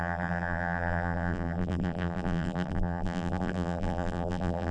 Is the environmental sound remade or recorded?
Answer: remade